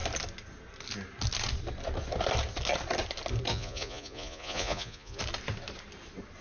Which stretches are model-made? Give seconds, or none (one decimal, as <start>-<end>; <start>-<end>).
3.5-5.2